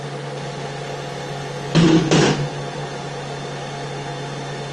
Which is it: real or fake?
real